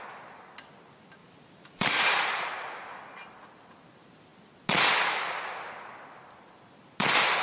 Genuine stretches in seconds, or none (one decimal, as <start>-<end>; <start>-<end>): 0.0-1.2; 2.5-7.4